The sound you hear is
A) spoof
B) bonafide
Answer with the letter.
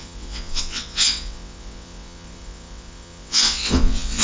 A